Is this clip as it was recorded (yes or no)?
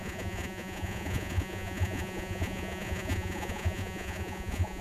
no